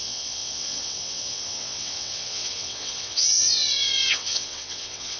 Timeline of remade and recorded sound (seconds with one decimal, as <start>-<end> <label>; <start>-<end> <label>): 0.0-5.2 remade